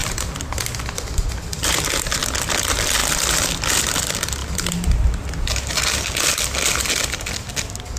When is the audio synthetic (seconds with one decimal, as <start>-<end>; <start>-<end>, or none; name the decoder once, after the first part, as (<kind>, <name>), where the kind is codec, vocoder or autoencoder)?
0.0-0.6 (vocoder, BigVGAN v2); 1.6-2.2; 4.4-6.4